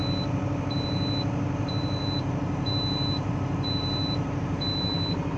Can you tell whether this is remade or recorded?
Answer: remade